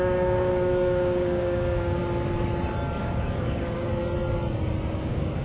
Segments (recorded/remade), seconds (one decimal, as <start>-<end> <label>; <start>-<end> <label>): 0.0-2.0 remade; 2.0-3.0 recorded; 3.0-3.9 remade; 3.9-4.9 recorded; 4.9-5.4 remade